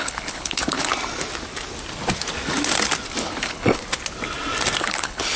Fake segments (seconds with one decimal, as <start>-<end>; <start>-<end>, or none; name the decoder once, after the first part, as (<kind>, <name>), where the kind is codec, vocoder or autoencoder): 0.0-0.9 (codec, HILCodec); 3.2-3.8; 4.8-5.4